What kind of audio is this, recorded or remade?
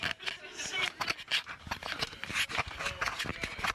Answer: recorded